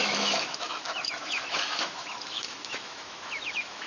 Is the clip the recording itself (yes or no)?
no